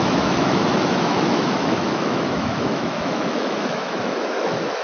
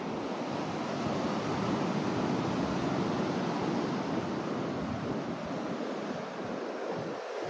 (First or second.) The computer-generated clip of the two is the first